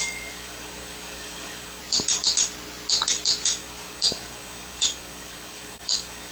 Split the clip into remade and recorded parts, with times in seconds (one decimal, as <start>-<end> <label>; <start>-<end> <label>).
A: 0.0-1.8 remade; 1.8-3.6 recorded; 3.6-6.3 remade